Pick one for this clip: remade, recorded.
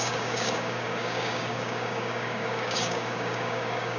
remade